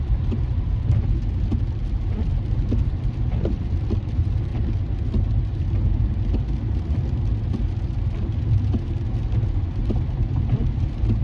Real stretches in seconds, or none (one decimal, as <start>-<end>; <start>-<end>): 4.5-9.6